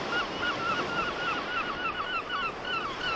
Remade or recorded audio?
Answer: recorded